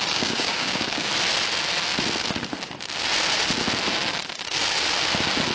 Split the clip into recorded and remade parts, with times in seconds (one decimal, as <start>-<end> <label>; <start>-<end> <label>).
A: 0.0-1.1 remade; 1.1-5.5 recorded